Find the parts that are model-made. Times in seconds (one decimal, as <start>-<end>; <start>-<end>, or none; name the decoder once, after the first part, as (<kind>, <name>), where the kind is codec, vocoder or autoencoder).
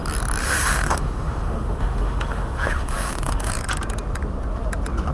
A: 0.4-3.5 (autoencoder, DAC-VAE)